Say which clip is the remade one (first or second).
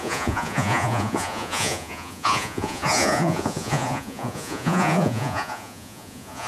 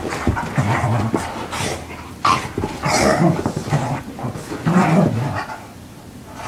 first